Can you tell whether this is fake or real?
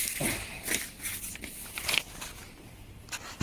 fake